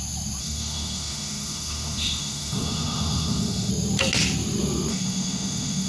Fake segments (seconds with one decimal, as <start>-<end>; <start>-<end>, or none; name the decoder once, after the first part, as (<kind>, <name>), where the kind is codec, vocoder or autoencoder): 0.4-3.7 (autoencoder, DAC-VAE); 4.9-5.9